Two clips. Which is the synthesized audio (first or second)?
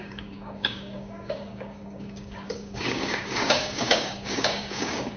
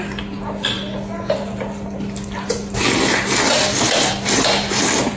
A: first